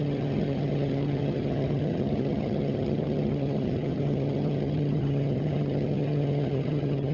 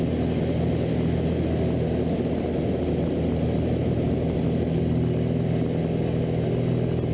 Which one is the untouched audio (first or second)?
second